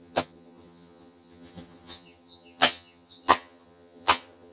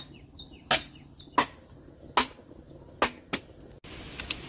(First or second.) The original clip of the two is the second